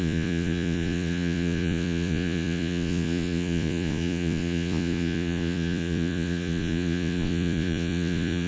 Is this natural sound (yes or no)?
no